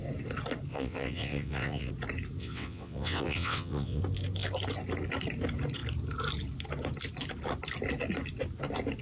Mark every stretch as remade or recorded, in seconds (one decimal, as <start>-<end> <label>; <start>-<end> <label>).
0.0-0.7 recorded; 0.7-1.9 remade; 1.9-2.4 recorded; 2.4-4.0 remade; 4.0-9.0 recorded